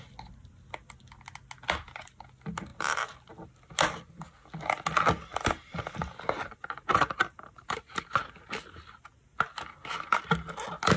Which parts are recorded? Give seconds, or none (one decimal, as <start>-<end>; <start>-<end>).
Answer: 0.0-2.7; 3.5-5.3; 8.0-11.0